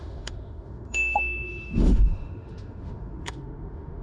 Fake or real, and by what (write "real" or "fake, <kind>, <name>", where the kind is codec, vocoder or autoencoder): fake, autoencoder, DAC-VAE